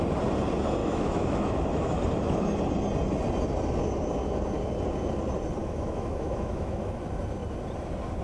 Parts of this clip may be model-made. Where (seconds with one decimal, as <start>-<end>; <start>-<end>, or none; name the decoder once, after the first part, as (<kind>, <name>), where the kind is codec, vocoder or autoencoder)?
0.8-2.0 (autoencoder, DAC-VAE); 5.6-7.0